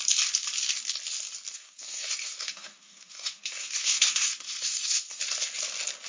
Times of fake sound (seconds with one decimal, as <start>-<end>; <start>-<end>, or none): 1.5-5.2